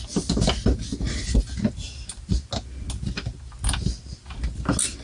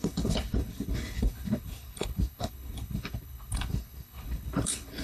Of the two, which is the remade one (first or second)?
second